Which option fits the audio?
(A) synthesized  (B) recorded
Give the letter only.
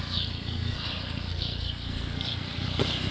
A